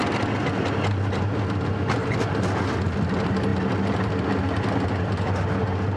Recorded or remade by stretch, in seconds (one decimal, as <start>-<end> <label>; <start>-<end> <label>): 0.0-6.0 recorded